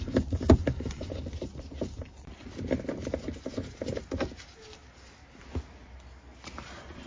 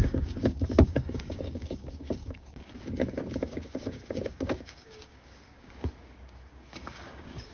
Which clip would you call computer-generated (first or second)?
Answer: second